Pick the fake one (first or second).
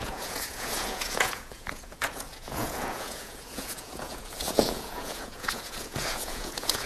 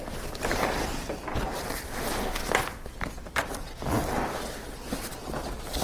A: first